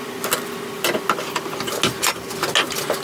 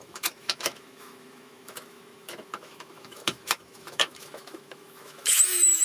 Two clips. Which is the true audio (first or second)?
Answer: first